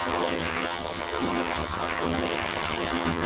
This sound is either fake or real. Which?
fake